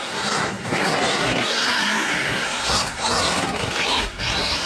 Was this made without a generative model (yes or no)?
no